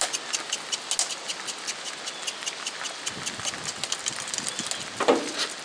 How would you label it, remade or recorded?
recorded